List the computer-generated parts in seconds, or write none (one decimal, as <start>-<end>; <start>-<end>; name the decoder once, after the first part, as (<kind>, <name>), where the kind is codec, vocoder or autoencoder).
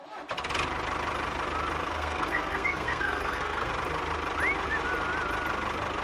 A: 1.8-3.7 (codec, SNAC)